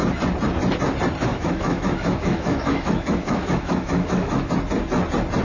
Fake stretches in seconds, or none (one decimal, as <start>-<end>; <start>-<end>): 1.3-4.5